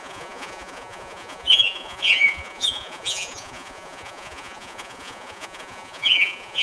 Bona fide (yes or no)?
no